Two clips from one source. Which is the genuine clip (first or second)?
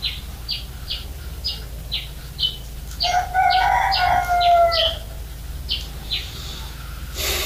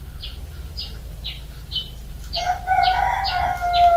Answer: first